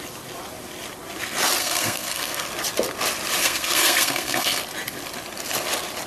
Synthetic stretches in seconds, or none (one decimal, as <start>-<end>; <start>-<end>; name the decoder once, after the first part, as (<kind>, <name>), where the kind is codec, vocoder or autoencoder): 1.6-2.5 (codec, SNAC); 3.4-4.6